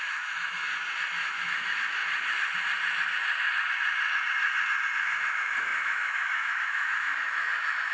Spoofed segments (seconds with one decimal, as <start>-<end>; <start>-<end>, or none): 0.0-0.7; 1.2-2.0; 5.0-7.9